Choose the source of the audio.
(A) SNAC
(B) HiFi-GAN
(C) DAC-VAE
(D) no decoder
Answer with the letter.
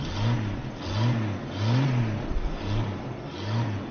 D